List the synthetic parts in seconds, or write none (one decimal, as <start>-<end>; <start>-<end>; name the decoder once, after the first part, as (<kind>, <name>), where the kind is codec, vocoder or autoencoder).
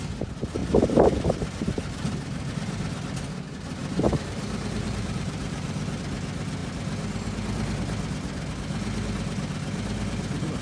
0.6-2.5 (vocoder, BigVGAN v2); 3.8-6.0